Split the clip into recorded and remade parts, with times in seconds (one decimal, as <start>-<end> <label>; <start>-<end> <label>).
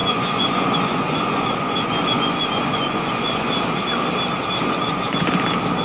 0.0-3.5 remade; 3.5-4.6 recorded; 4.6-5.3 remade; 5.3-5.8 recorded